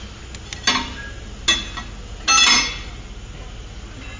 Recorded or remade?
recorded